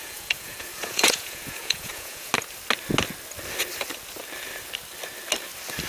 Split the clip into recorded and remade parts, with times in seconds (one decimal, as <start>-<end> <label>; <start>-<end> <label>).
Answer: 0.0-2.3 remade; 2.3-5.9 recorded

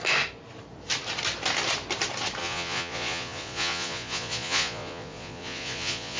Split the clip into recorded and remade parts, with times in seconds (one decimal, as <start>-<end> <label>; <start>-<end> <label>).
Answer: 0.0-2.4 recorded; 2.4-6.2 remade

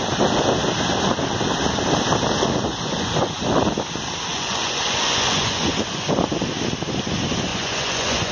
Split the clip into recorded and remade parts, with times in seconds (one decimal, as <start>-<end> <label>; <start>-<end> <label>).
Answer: 0.0-2.7 recorded; 2.7-3.5 remade; 3.5-4.3 recorded; 4.3-6.3 remade; 6.3-7.5 recorded; 7.5-8.3 remade

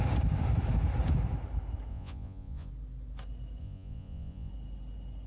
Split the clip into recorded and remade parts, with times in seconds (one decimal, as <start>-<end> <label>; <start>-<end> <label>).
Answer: 0.0-1.9 recorded; 1.9-2.7 remade; 2.7-3.6 recorded; 3.6-4.5 remade; 4.5-5.3 recorded